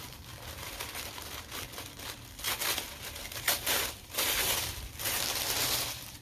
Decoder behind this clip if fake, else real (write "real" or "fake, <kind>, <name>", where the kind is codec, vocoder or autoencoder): fake, vocoder, BigVGAN v2